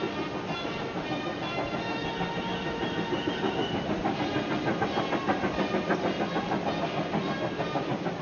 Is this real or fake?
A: real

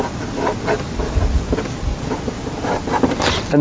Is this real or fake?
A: real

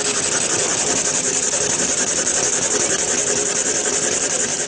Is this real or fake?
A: real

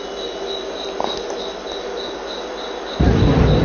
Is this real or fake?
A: real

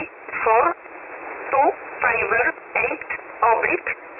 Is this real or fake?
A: fake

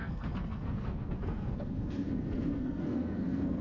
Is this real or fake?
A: fake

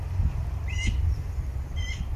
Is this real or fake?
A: fake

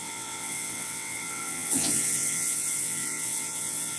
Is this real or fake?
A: fake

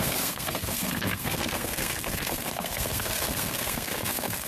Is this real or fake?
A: fake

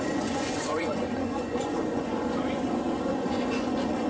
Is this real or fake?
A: fake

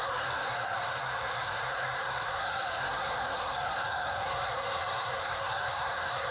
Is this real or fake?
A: fake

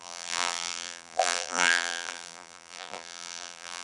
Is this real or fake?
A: fake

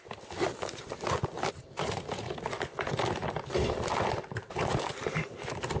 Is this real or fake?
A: real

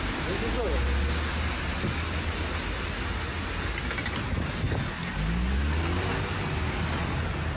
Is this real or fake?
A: real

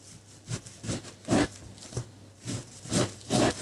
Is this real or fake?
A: real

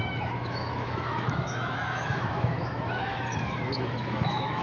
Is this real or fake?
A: fake